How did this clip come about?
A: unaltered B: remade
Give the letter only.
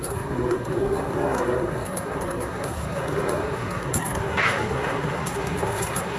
B